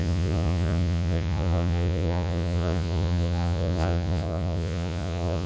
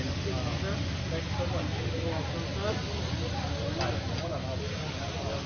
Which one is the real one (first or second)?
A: second